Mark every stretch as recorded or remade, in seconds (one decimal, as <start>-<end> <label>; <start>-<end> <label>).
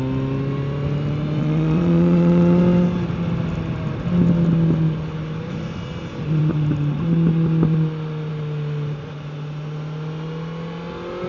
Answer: 0.0-1.4 recorded; 1.4-2.6 remade; 2.6-11.3 recorded